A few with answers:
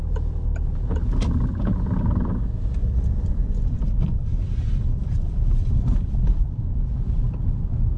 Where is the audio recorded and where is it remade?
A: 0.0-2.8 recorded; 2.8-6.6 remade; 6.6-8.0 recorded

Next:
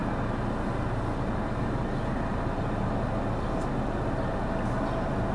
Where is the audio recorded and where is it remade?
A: 0.0-5.3 recorded

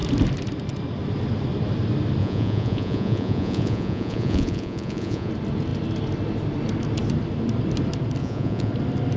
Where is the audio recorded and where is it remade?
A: 0.0-2.2 recorded; 2.2-5.3 remade; 5.3-8.2 recorded; 8.2-8.7 remade; 8.7-9.2 recorded

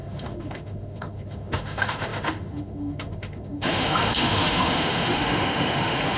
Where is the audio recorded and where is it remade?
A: 0.0-6.2 remade

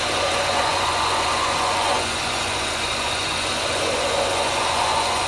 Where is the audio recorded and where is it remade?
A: 0.0-5.3 remade

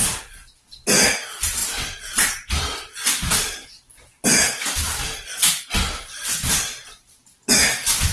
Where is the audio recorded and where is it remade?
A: 0.0-8.1 recorded

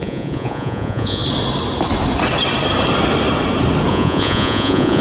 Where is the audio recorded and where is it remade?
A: 0.0-1.2 remade; 1.2-3.9 recorded; 3.9-5.0 remade